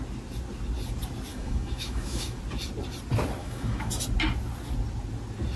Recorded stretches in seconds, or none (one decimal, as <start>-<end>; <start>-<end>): 0.0-1.3; 2.4-3.4; 3.9-5.6